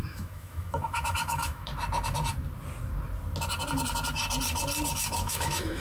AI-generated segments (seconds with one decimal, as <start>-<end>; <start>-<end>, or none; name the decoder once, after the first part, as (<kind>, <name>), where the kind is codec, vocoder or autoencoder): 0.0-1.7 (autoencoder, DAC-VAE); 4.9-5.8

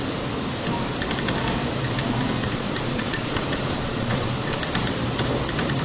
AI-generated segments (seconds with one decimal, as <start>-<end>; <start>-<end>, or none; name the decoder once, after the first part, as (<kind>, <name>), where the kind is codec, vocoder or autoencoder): 2.4-4.6 (vocoder, Vocos)

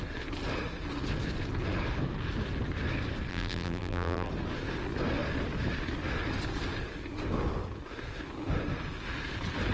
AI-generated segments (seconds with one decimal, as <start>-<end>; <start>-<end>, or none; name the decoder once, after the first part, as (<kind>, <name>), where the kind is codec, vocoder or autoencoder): 3.3-4.3 (vocoder, BigVGAN v2)

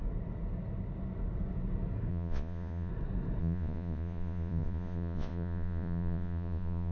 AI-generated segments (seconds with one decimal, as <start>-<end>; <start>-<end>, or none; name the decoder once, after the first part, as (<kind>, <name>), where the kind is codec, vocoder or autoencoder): 2.1-2.9 (vocoder, Vocos); 3.4-6.9